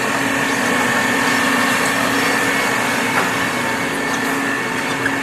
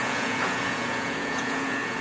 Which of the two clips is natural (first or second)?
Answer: first